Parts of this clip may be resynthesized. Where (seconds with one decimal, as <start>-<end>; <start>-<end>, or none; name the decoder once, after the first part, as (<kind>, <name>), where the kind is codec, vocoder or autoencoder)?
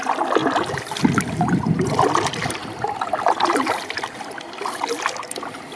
none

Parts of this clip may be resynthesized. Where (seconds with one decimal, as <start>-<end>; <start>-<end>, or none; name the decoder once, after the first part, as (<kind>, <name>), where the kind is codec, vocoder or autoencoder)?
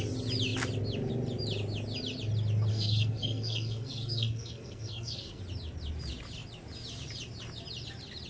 2.7-5.4 (codec, SNAC)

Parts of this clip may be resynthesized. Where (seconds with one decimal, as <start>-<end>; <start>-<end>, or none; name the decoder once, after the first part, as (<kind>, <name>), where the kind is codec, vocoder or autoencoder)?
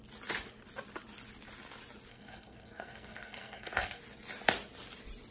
2.1-4.0 (codec, SNAC)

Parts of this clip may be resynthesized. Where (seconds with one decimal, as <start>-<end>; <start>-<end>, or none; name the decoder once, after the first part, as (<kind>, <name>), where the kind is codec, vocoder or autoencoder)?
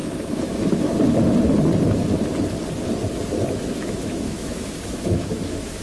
3.5-5.8 (autoencoder, DAC-VAE)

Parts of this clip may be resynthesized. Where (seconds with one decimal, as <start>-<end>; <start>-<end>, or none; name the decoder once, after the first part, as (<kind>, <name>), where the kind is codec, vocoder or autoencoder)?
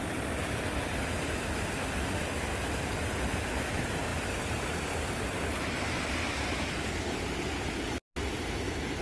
none